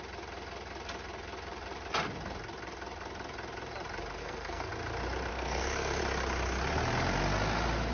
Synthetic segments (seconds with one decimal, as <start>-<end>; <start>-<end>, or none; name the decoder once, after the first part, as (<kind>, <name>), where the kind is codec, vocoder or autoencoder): 4.2-4.7 (codec, SNAC); 5.3-6.0